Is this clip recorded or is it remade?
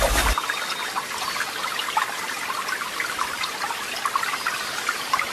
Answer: recorded